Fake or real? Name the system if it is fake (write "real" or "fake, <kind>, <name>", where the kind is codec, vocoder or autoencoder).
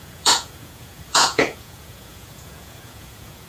fake, vocoder, Vocos